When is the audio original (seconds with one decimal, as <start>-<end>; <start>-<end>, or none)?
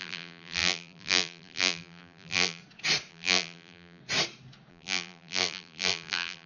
2.6-3.1; 4.0-4.7